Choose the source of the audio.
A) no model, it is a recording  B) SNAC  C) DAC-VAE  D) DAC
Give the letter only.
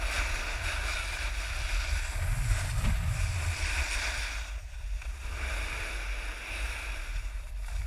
A